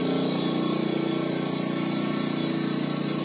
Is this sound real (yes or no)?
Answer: yes